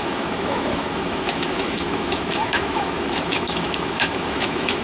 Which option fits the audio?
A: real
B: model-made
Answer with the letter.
B